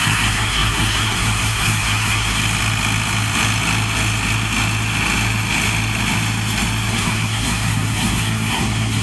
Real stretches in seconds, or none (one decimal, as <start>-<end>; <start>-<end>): 2.4-6.9